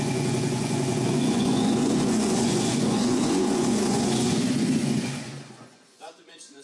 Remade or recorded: remade